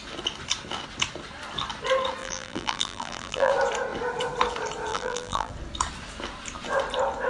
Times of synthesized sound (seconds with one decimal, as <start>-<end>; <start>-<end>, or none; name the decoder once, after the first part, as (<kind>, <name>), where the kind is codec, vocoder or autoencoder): 2.2-3.5 (vocoder, BigVGAN v2); 4.9-5.5